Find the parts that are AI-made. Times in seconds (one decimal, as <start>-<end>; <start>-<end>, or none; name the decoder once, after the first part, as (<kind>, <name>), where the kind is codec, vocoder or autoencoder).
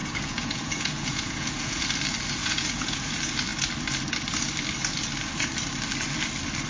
0.0-1.8 (vocoder, Vocos); 2.4-3.1